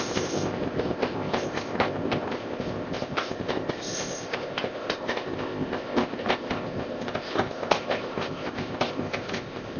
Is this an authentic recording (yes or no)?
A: no